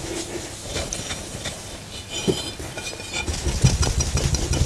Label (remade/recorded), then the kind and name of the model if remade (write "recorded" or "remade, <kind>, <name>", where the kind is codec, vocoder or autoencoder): recorded